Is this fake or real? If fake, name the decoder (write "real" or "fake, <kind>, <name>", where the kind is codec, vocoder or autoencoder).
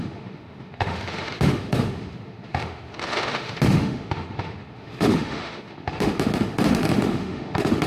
fake, autoencoder, DAC-VAE